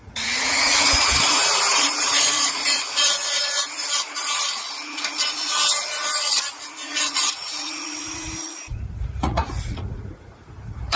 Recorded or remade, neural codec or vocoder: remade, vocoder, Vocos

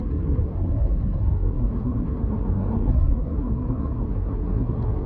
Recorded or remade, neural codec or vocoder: remade, codec, SNAC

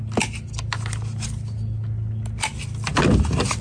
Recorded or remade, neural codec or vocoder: recorded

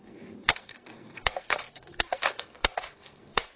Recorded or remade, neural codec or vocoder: remade, codec, SNAC